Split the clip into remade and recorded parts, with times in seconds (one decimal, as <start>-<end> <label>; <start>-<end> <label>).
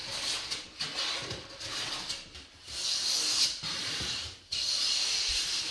0.0-3.4 recorded; 3.4-5.7 remade